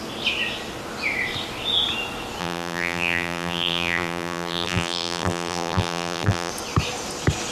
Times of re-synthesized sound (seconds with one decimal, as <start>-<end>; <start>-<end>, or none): 2.4-6.5